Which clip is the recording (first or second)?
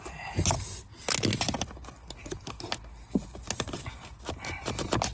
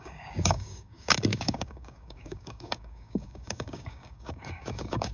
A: first